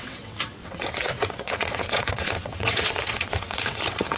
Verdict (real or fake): fake